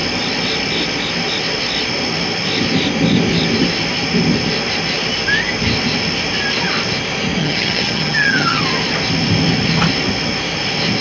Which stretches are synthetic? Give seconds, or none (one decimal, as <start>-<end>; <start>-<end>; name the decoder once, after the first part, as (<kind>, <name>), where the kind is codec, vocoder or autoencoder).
7.4-8.6 (vocoder, HiFi-GAN)